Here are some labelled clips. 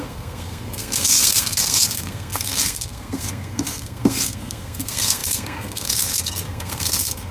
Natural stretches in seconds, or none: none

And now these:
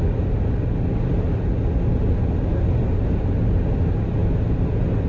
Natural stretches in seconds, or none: 0.0-5.1